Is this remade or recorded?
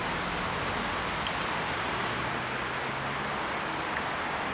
recorded